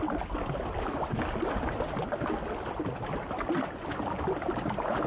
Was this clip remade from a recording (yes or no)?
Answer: no